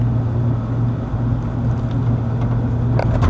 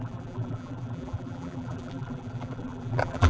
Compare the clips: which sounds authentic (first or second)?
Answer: first